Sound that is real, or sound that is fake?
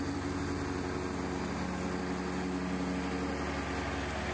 real